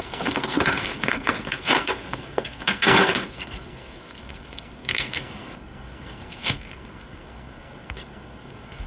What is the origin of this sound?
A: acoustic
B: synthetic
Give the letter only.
B